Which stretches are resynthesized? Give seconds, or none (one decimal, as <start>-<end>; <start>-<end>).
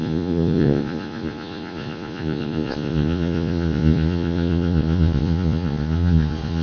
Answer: 0.0-6.6